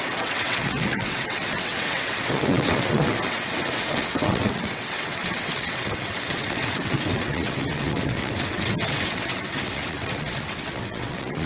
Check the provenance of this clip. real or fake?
fake